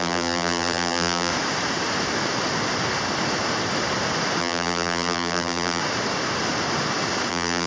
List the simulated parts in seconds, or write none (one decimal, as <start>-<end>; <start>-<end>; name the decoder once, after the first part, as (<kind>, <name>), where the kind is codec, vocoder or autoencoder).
0.0-1.3 (vocoder, BigVGAN v2); 4.4-5.8; 7.3-7.7